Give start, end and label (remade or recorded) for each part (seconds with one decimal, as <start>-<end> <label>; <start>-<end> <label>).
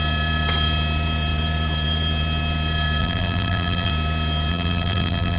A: 0.0-3.0 recorded; 3.0-3.9 remade; 3.9-4.5 recorded; 4.5-5.4 remade